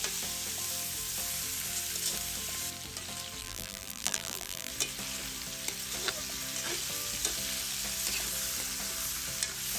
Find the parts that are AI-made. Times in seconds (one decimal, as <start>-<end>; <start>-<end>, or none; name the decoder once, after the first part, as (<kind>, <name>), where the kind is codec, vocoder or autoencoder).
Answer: 3.4-4.7 (vocoder, BigVGAN v2)